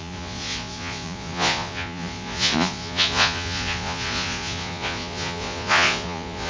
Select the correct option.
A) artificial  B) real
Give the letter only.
A